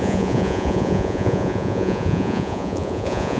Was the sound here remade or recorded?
remade